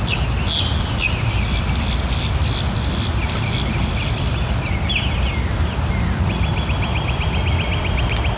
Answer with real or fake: real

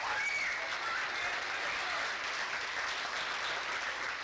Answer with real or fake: real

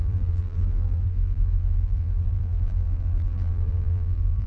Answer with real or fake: fake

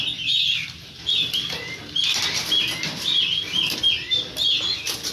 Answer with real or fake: real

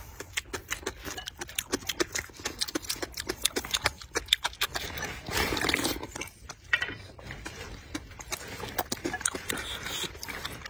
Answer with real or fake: real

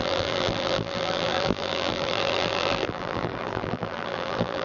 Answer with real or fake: fake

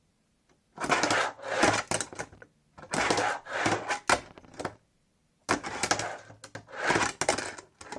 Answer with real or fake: real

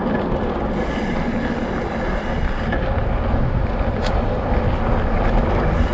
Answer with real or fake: real